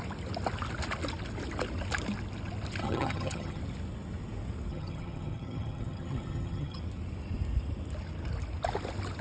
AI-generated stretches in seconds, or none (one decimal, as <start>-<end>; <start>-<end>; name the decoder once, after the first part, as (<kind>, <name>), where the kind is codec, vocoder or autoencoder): 2.8-3.6 (vocoder, HiFi-GAN); 4.7-6.8